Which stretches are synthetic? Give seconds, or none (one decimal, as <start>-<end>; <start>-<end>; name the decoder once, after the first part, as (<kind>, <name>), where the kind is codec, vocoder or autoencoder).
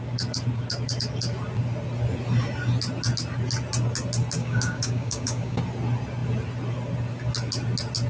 4.4-5.6 (codec, DAC)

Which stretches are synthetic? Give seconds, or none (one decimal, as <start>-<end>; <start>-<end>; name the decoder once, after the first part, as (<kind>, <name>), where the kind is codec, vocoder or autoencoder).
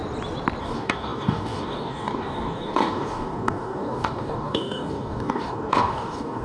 0.6-6.4 (codec, DAC)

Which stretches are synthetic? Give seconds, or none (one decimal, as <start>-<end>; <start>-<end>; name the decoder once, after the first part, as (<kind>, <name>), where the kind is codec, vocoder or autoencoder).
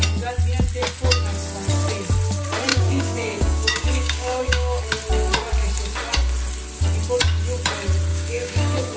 2.7-4.8 (codec, DAC); 8.1-9.0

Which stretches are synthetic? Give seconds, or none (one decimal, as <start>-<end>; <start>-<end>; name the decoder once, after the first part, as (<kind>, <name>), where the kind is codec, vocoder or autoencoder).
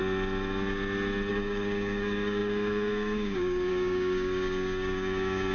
1.3-5.5 (codec, DAC)